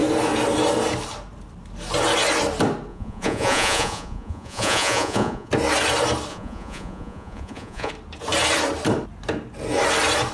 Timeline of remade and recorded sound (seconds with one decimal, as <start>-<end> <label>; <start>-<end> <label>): 0.0-2.9 recorded; 2.9-5.5 remade; 5.5-6.3 recorded; 6.3-7.9 remade; 7.9-10.3 recorded